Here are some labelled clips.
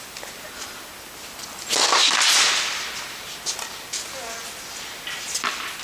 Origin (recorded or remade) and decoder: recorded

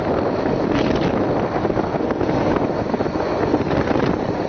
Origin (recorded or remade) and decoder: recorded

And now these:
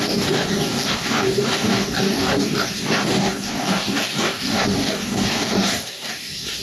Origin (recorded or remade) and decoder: remade, codec, DAC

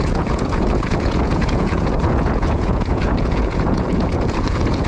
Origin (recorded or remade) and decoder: remade, vocoder, Vocos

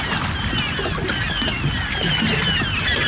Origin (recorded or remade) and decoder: recorded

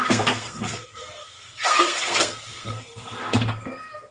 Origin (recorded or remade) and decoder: remade, codec, SNAC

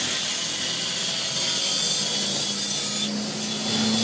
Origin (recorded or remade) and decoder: recorded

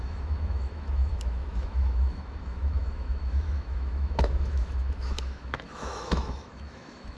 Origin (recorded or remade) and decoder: remade, autoencoder, DAC-VAE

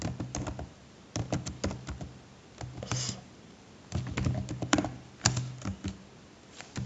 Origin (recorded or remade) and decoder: recorded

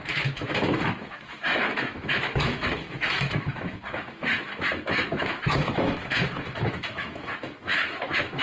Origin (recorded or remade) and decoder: remade, autoencoder, DAC-VAE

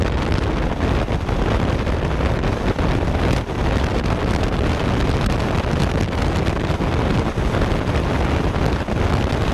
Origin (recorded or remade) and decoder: recorded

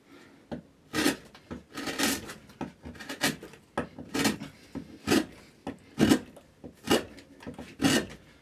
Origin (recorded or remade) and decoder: recorded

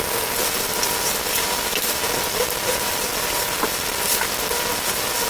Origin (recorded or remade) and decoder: recorded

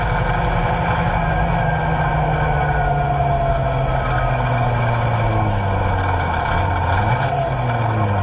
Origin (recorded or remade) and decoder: recorded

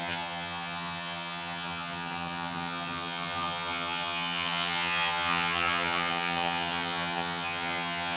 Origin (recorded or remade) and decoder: remade, vocoder, HiFi-GAN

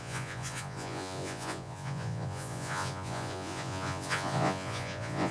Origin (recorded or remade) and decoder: remade, vocoder, Vocos